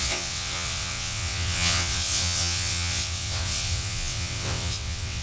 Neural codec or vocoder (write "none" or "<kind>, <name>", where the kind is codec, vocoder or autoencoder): vocoder, WaveNeXt